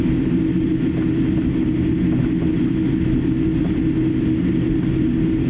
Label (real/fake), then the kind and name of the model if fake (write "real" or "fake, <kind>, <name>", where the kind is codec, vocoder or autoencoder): real